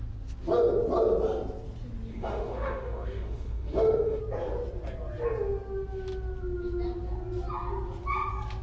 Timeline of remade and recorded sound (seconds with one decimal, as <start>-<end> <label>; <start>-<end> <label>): 0.0-2.1 recorded; 2.1-4.2 remade; 4.2-8.6 recorded

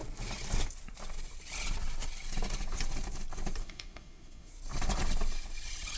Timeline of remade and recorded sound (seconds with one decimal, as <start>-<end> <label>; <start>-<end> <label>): 0.0-3.6 recorded; 3.6-4.5 remade; 4.5-6.0 recorded

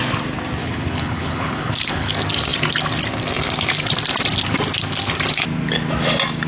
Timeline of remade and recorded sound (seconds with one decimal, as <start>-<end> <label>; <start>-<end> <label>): 0.0-0.6 recorded; 0.6-2.1 remade; 2.1-6.5 recorded

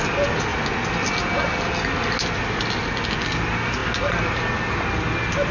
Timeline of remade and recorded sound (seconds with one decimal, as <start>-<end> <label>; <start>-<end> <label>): 0.0-5.5 recorded

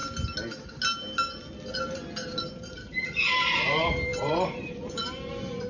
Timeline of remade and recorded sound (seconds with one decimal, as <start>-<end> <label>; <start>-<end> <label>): 0.0-1.7 recorded; 1.7-5.7 remade

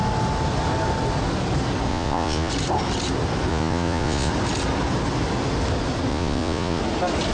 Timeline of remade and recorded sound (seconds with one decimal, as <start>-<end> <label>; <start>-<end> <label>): 0.0-1.9 recorded; 1.9-2.5 remade; 2.5-3.5 recorded; 3.5-4.3 remade; 4.3-6.1 recorded; 6.1-6.8 remade; 6.8-7.3 recorded